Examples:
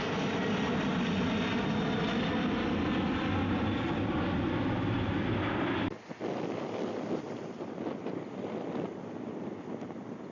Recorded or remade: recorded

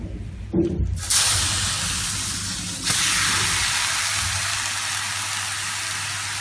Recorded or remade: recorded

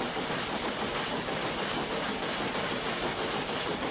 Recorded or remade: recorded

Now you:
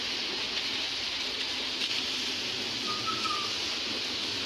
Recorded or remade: recorded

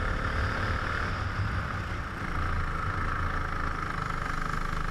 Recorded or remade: recorded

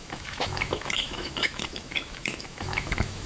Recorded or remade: remade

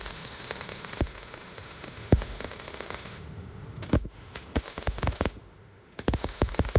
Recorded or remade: remade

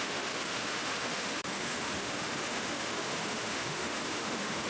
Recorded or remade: remade